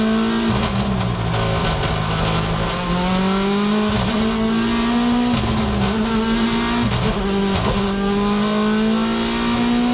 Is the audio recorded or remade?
recorded